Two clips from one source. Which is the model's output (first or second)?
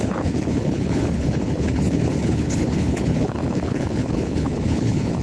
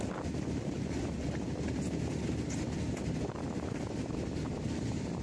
first